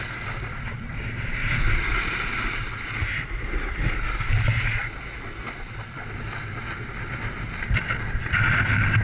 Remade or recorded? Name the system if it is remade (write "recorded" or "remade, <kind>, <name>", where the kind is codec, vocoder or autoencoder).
recorded